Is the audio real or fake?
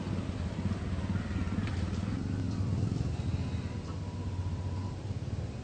real